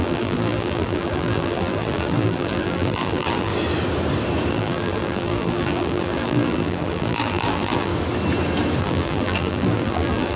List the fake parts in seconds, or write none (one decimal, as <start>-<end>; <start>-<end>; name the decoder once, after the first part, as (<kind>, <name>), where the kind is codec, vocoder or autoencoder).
0.0-3.5 (vocoder, BigVGAN v2); 4.5-7.9; 8.8-10.4